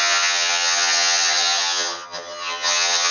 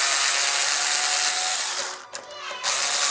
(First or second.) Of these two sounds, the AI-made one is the first